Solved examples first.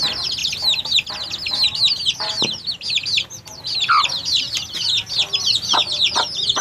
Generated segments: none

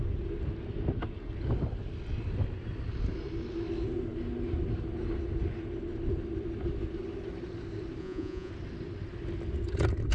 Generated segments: 8.0-8.5 (vocoder, Vocos)

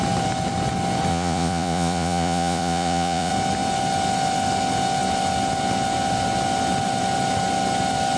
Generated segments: 1.1-3.3 (vocoder, Vocos)

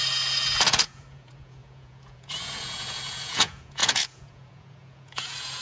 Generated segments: 0.6-5.6 (vocoder, Vocos)

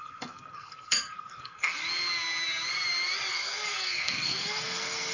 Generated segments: 0.0-1.8 (codec, SNAC); 3.3-5.1

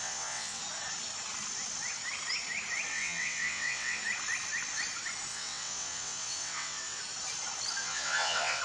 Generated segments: 0.0-0.6 (vocoder, WaveNeXt); 2.9-4.0; 5.3-7.0; 7.8-8.6

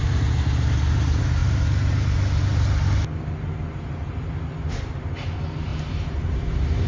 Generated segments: 5.7-6.3 (vocoder, BigVGAN v2)

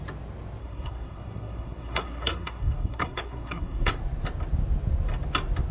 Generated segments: 0.6-4.0 (codec, SNAC)